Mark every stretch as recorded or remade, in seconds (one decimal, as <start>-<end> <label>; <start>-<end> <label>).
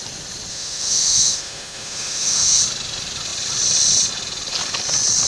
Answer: 0.0-0.5 recorded; 0.5-2.6 remade; 2.6-5.3 recorded